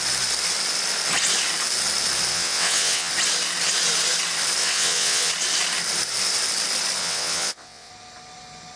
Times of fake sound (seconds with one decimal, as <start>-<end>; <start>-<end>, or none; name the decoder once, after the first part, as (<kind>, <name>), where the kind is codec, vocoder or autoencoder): 2.3-3.1 (vocoder, WaveNeXt); 4.6-5.3; 7.0-7.9